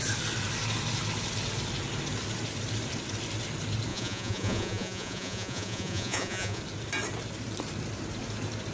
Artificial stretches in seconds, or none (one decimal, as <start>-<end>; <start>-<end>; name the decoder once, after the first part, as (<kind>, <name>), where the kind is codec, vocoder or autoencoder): 3.9-6.6 (vocoder, Vocos)